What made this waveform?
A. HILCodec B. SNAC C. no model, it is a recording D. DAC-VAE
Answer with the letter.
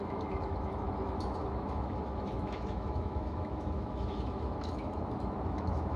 D